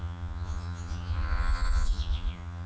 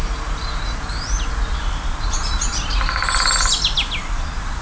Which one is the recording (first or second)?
second